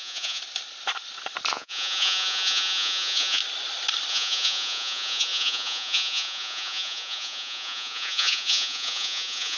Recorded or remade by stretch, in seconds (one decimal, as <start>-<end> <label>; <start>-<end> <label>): 0.0-0.4 remade; 0.4-1.5 recorded; 1.5-3.4 remade; 3.4-4.1 recorded; 4.1-9.6 remade